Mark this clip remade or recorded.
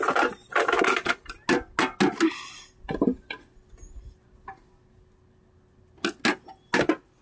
recorded